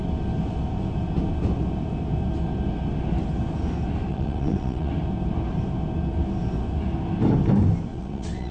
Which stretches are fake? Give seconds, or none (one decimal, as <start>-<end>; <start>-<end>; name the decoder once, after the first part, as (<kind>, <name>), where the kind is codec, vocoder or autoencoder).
4.1-4.9 (vocoder, WaveNeXt); 7.9-8.5